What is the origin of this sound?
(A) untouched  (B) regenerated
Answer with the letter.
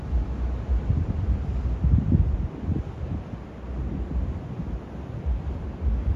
A